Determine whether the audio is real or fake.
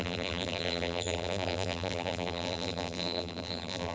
fake